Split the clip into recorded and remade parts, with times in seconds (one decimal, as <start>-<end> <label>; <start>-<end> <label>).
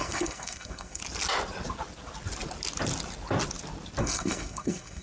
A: 0.0-1.0 remade; 1.0-4.0 recorded; 4.0-5.0 remade